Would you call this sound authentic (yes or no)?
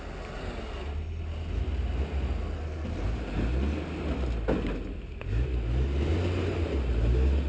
yes